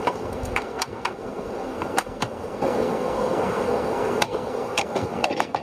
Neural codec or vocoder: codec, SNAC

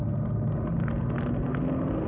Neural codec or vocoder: none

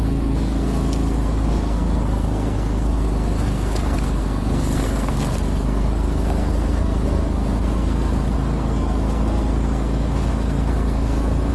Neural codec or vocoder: codec, SNAC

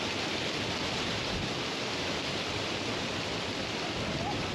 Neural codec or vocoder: none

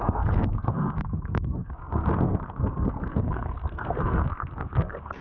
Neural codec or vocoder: codec, SNAC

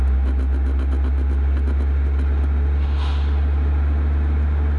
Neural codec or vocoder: none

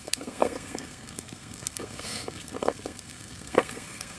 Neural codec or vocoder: codec, SNAC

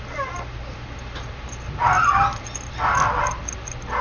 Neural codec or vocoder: none